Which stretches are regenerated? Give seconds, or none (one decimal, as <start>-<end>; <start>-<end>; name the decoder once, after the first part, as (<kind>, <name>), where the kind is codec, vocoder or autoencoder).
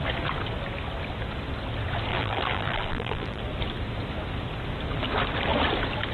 2.1-3.4 (vocoder, BigVGAN v2)